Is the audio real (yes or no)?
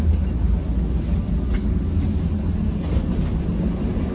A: yes